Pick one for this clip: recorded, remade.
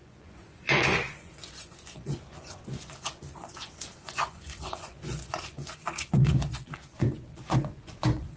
remade